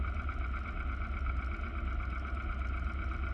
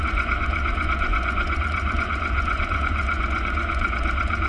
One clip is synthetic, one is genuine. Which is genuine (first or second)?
first